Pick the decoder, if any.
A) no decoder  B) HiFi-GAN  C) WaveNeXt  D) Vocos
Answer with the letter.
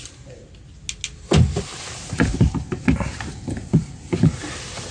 A